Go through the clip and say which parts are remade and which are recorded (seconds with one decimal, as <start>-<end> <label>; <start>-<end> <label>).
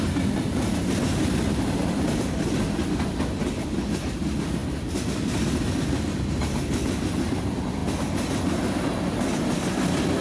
0.0-10.2 recorded